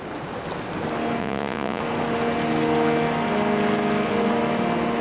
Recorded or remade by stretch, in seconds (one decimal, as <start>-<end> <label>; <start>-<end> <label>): 0.0-1.2 recorded; 1.2-1.8 remade; 1.8-5.0 recorded